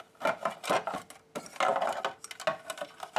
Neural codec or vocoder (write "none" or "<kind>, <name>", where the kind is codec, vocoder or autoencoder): none